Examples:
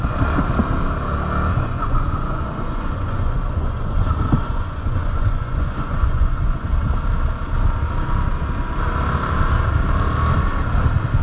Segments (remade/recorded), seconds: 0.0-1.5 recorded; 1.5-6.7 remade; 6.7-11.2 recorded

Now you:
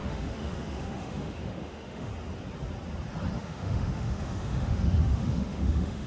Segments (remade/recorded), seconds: 0.0-2.1 remade; 2.1-3.3 recorded; 3.3-6.1 remade

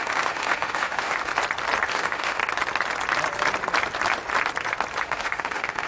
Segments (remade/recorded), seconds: 0.0-1.3 remade; 1.3-1.9 recorded; 1.9-2.4 remade; 2.4-5.0 recorded; 5.0-5.9 remade

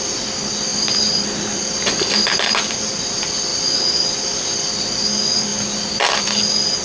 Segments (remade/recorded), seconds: 0.0-0.7 recorded; 0.7-1.7 remade; 1.7-3.5 recorded; 3.5-4.7 remade; 4.7-5.5 recorded; 5.5-6.1 remade; 6.1-6.8 recorded

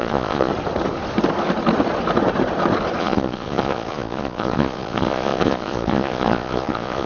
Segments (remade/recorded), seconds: 0.0-0.5 remade; 0.5-3.0 recorded; 3.0-7.1 remade

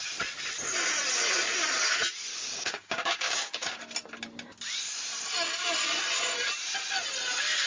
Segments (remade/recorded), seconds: 0.0-2.3 recorded; 2.3-3.8 remade; 3.8-7.7 recorded